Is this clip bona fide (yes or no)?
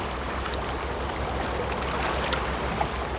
yes